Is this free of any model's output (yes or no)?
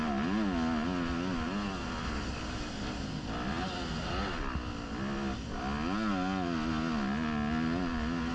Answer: yes